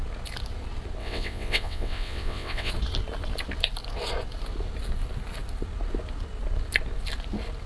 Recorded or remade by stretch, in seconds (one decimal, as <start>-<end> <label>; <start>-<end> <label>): 0.0-1.0 recorded; 1.0-2.7 remade; 2.7-7.7 recorded